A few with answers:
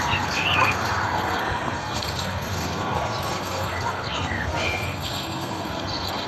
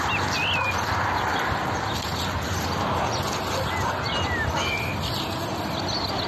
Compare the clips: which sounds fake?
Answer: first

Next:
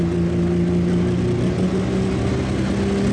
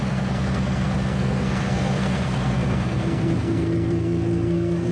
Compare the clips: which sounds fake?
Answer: second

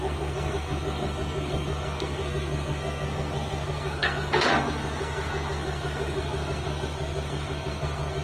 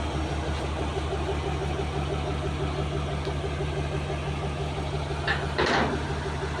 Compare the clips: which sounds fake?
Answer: first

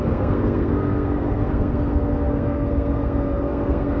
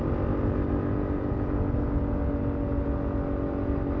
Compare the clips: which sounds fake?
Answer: first